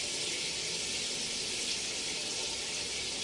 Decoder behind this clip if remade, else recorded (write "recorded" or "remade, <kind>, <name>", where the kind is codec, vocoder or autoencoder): recorded